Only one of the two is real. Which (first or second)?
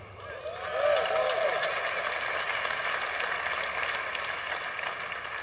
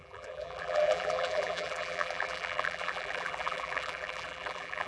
first